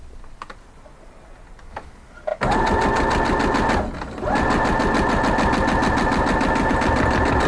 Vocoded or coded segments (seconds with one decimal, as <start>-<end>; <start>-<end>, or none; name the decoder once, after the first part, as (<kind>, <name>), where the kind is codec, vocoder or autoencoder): none